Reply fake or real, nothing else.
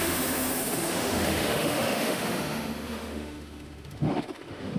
fake